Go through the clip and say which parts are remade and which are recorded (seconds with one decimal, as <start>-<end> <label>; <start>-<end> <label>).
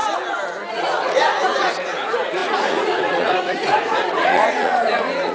0.0-0.7 recorded; 0.7-5.3 remade